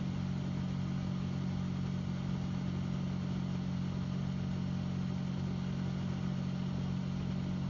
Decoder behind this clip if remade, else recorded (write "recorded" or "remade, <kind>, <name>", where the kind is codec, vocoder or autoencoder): recorded